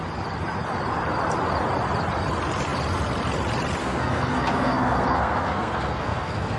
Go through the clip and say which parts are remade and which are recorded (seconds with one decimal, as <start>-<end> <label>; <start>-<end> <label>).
0.0-3.8 recorded; 3.8-6.6 remade